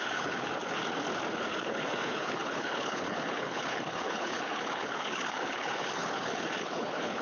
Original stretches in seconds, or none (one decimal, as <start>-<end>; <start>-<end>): 0.8-1.5